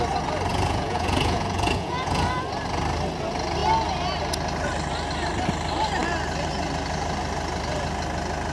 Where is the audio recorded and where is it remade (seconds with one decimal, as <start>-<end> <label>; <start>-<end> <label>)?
0.0-0.5 recorded; 0.5-2.3 remade; 2.3-8.5 recorded